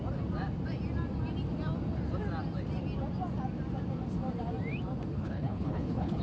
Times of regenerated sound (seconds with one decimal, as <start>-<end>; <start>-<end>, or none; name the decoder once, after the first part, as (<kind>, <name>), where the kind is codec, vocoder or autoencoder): 5.1-6.2 (codec, HILCodec)